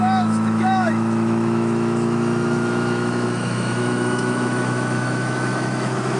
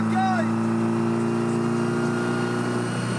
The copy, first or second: first